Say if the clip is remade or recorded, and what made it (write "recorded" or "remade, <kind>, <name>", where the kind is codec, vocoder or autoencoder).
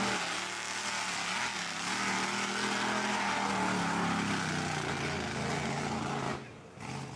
recorded